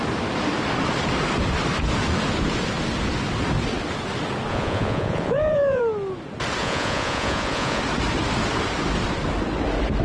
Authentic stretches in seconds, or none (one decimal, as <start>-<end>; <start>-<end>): 0.0-4.5; 5.8-6.6; 7.8-10.0